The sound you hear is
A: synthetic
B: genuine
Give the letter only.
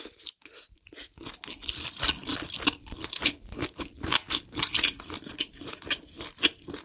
B